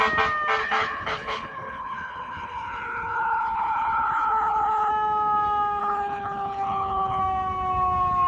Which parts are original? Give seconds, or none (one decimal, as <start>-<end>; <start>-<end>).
0.0-0.6; 4.9-5.8; 7.2-8.3